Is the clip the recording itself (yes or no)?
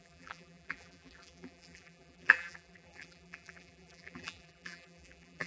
no